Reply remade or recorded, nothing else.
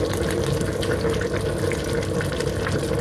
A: recorded